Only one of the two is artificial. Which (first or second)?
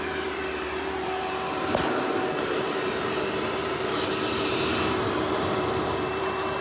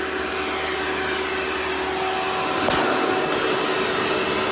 first